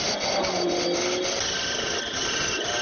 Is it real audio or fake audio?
real